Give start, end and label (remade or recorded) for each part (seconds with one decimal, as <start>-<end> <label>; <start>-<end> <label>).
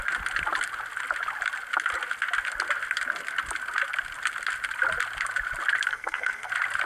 0.0-5.9 recorded; 5.9-6.5 remade; 6.5-6.9 recorded